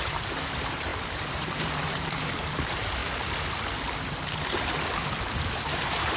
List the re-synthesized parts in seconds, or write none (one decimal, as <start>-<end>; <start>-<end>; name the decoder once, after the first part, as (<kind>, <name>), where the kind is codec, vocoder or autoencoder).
0.0-3.0 (vocoder, BigVGAN v2); 5.6-6.2